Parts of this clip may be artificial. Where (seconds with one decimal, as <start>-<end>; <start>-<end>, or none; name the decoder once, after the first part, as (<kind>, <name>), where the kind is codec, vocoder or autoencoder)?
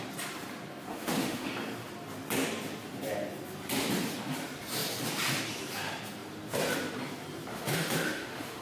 0.9-1.5 (autoencoder, DAC-VAE); 7.5-8.6